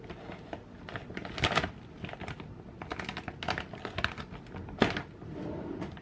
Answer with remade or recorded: recorded